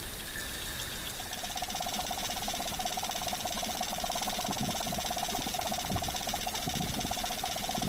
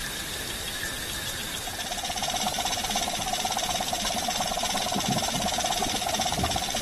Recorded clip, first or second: first